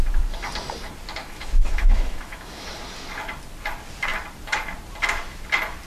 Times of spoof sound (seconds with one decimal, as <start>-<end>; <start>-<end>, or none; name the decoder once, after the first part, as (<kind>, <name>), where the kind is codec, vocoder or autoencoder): 1.2-2.7 (autoencoder, DAC-VAE)